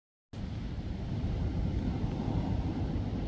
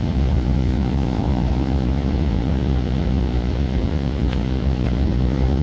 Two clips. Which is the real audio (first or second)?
first